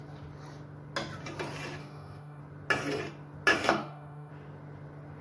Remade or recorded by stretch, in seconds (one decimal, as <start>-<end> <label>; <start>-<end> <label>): 0.0-1.8 recorded; 1.8-2.4 remade; 2.4-3.5 recorded; 3.5-4.3 remade; 4.3-5.2 recorded

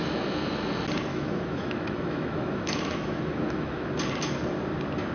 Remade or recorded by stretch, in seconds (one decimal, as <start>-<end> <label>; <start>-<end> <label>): 0.0-1.1 recorded; 1.1-3.9 remade; 3.9-5.1 recorded

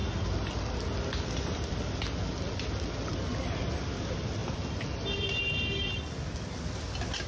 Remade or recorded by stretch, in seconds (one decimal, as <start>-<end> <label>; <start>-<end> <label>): 0.0-7.3 recorded

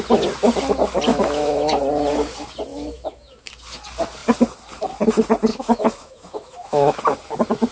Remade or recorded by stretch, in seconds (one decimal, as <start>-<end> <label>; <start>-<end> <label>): 0.0-1.1 recorded; 1.1-1.8 remade; 1.8-2.7 recorded; 2.7-3.5 remade; 3.5-5.5 recorded; 5.5-7.0 remade; 7.0-7.7 recorded

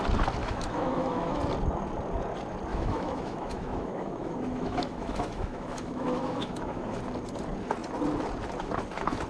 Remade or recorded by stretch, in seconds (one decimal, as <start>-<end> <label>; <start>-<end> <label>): 0.0-0.4 recorded; 0.4-1.4 remade; 1.4-2.7 recorded; 2.7-7.0 remade; 7.0-9.3 recorded